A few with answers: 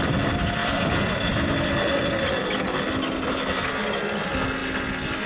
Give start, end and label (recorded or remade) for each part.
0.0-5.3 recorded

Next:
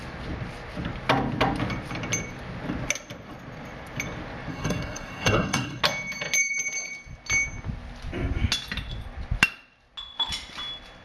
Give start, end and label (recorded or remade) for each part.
0.0-4.5 recorded; 4.5-5.8 remade; 5.8-11.0 recorded